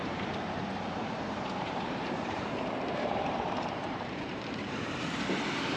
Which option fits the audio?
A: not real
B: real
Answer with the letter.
A